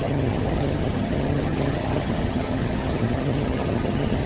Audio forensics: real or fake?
fake